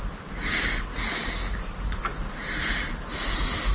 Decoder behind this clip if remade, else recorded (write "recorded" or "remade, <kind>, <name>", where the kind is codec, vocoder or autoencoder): recorded